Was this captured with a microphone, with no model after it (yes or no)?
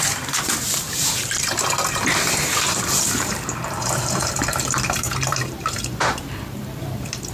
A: no